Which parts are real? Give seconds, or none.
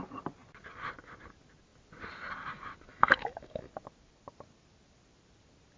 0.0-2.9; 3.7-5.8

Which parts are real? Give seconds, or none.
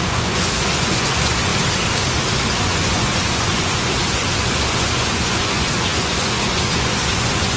1.5-2.5